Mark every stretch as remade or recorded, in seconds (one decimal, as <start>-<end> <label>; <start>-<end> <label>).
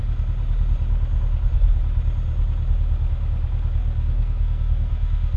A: 0.0-3.8 recorded; 3.8-5.4 remade